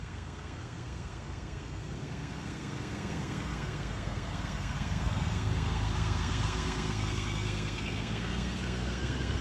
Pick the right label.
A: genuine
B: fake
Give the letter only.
B